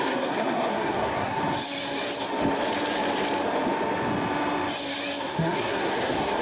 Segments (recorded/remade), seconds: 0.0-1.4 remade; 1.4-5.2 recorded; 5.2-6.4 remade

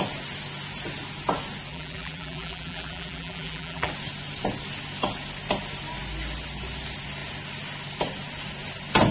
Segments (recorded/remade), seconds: 0.0-1.7 recorded; 1.7-3.9 remade; 3.9-9.1 recorded

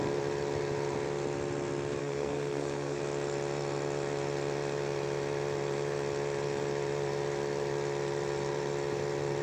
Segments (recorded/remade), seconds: 0.0-2.0 recorded; 2.0-3.0 remade; 3.0-9.4 recorded

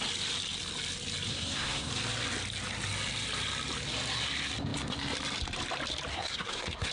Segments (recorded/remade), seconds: 0.0-1.3 recorded; 1.3-1.9 remade; 1.9-6.1 recorded; 6.1-6.9 remade

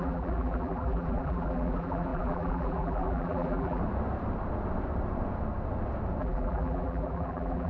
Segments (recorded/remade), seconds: 0.0-3.8 remade; 3.8-6.2 recorded; 6.2-7.7 remade

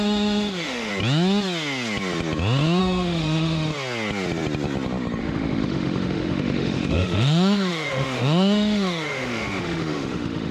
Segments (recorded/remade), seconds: 0.0-0.9 remade; 0.9-2.8 recorded; 2.8-3.7 remade; 3.7-5.2 recorded; 5.2-10.5 remade

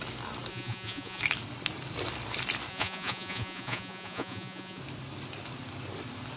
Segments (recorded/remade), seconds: 0.0-0.5 recorded; 0.5-1.2 remade; 1.2-2.7 recorded; 2.7-4.8 remade; 4.8-6.4 recorded

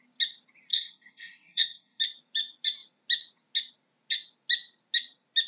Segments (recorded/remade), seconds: 0.0-0.7 recorded; 0.7-2.0 remade; 2.0-5.5 recorded